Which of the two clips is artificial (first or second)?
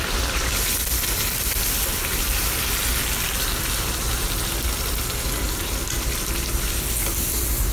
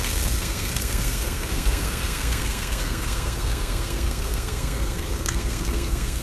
second